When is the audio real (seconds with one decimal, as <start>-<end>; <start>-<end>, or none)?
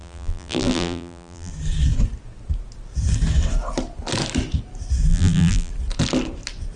1.5-5.1; 5.7-6.8